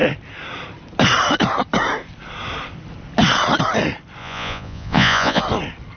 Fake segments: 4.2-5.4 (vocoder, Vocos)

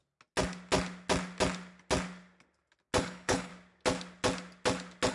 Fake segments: 3.0-3.5 (codec, HILCodec)

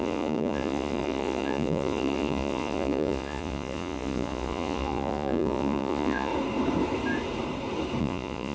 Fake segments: 0.0-6.3 (vocoder, Vocos); 8.0-8.5

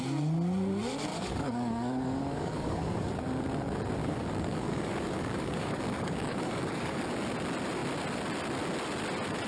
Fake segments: 1.1-3.1 (codec, DAC); 4.0-7.1

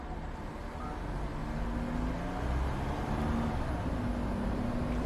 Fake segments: none

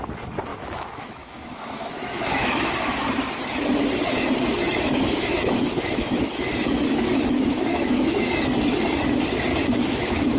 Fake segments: 0.5-2.7 (autoencoder, DAC-VAE); 5.0-8.3; 9.5-10.4